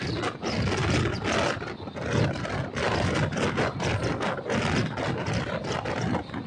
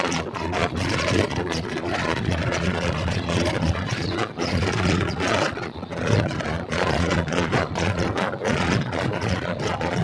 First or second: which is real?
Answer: first